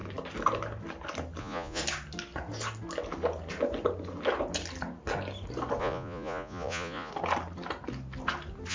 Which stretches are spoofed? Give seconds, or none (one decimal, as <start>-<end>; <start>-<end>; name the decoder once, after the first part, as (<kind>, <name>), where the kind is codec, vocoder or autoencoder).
1.4-1.8 (vocoder, Vocos); 5.8-7.1